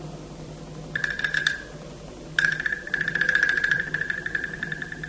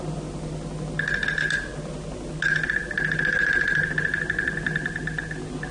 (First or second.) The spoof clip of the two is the first